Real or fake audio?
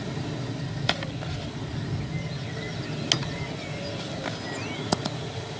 real